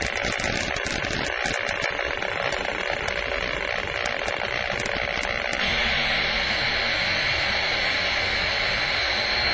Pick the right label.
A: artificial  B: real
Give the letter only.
B